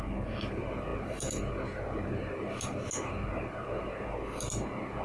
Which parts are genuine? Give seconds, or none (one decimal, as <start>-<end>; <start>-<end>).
0.0-5.0